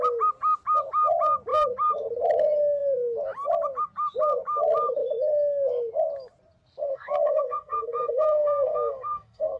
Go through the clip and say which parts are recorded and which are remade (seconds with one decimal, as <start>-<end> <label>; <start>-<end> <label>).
0.0-6.8 recorded; 6.8-9.6 remade

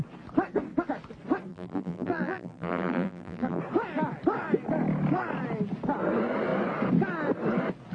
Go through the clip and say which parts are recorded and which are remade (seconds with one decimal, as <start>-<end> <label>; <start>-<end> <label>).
0.0-1.5 recorded; 1.5-3.6 remade; 3.6-7.9 recorded

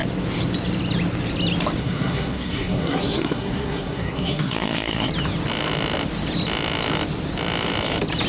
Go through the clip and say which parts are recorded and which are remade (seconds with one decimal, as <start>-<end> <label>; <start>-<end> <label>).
0.0-1.8 recorded; 1.8-5.1 remade; 5.1-8.3 recorded

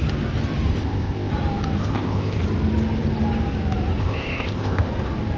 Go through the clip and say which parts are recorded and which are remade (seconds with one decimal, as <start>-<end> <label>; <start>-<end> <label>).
0.0-0.7 recorded; 0.7-1.3 remade; 1.3-1.8 recorded; 1.8-2.4 remade; 2.4-4.0 recorded; 4.0-4.9 remade; 4.9-5.4 recorded

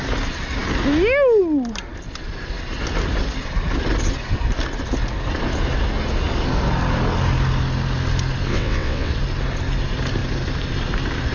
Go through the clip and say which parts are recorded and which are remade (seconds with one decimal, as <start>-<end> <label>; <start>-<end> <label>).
0.0-8.5 recorded; 8.5-9.1 remade; 9.1-11.3 recorded

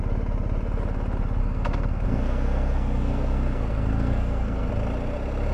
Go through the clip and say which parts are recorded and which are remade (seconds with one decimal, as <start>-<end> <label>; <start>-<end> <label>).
0.0-1.4 recorded; 1.4-4.7 remade; 4.7-5.5 recorded

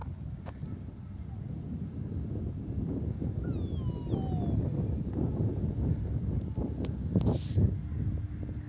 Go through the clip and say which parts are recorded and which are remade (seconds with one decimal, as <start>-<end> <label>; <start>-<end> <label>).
0.0-8.7 recorded

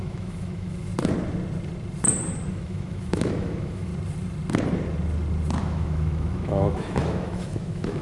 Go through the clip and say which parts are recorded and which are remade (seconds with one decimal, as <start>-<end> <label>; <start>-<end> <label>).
0.0-0.9 remade; 0.9-2.5 recorded; 2.5-3.9 remade; 3.9-5.6 recorded; 5.6-8.0 remade